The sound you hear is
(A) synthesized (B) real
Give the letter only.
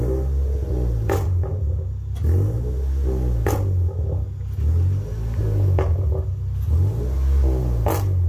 B